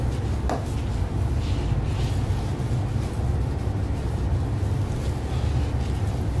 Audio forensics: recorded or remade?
recorded